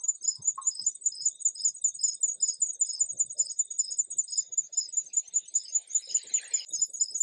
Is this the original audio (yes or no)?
yes